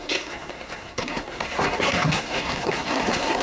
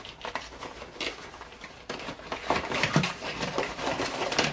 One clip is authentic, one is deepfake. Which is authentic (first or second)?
second